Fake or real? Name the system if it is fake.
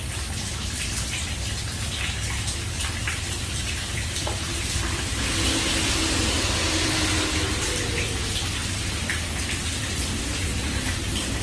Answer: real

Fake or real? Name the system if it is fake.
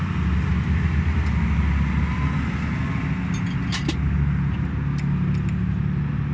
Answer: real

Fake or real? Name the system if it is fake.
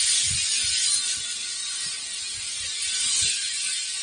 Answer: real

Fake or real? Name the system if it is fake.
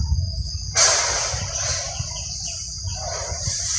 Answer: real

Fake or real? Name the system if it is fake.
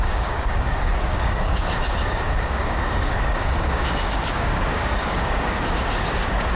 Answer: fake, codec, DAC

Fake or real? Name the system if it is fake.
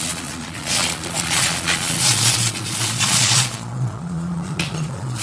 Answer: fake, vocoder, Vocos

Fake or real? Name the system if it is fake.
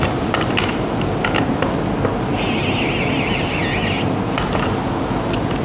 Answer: real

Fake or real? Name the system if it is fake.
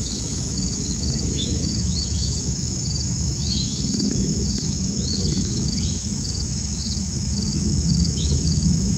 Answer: fake, autoencoder, DAC-VAE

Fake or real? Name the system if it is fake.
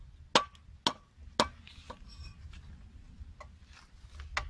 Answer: real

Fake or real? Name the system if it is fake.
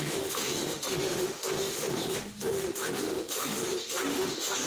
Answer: fake, autoencoder, DAC-VAE